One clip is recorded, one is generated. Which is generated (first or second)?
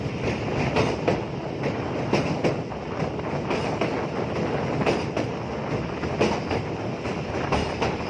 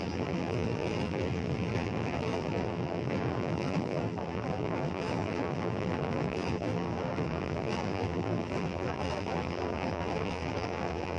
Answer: second